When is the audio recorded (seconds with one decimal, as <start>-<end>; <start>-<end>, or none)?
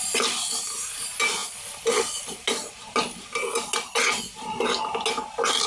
0.0-5.7